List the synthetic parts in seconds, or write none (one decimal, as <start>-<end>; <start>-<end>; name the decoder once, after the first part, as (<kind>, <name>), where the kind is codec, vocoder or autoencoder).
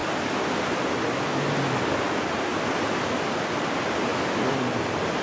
2.0-2.5 (vocoder, BigVGAN v2); 3.3-4.1; 4.8-5.2